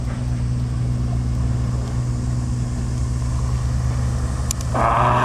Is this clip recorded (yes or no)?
yes